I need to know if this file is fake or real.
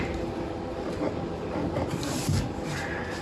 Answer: real